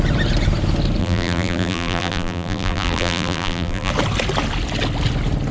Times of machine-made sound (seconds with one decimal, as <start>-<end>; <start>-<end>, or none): 1.0-3.9